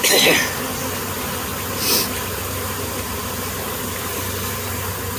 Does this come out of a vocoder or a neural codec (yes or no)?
no